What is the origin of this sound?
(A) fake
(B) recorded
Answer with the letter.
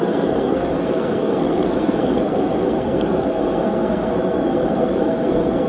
A